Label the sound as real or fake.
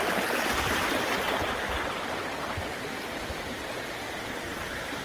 real